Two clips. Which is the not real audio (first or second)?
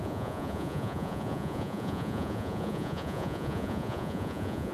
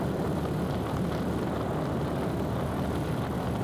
first